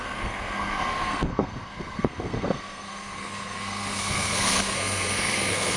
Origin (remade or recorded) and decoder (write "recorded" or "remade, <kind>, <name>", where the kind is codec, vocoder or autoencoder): remade, codec, SNAC